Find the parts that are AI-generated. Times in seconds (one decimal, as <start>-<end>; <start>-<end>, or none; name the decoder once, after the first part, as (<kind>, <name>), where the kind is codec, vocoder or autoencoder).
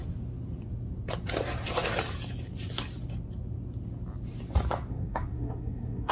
4.9-6.1 (codec, SNAC)